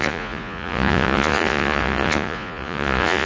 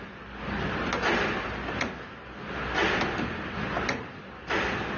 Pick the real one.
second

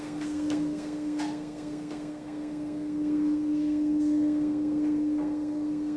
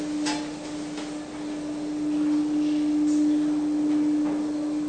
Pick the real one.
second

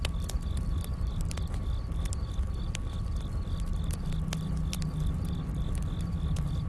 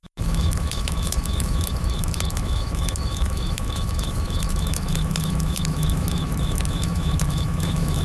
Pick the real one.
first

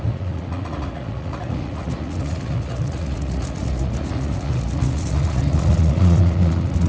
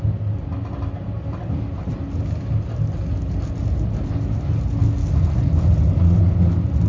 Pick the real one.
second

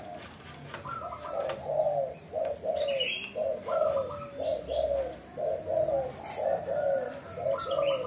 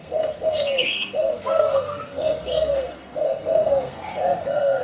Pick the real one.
first